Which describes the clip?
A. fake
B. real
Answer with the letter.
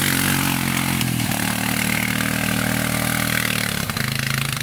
B